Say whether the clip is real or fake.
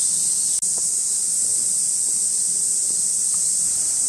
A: real